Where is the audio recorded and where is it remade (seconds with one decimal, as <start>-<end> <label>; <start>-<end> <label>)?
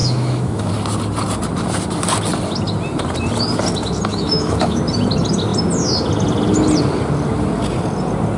0.0-0.7 remade; 0.7-4.1 recorded; 4.1-4.8 remade; 4.8-8.4 recorded